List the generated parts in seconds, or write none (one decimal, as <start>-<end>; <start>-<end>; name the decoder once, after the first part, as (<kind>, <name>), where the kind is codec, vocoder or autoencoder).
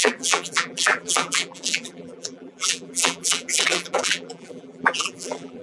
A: 0.0-5.6 (vocoder, BigVGAN v2)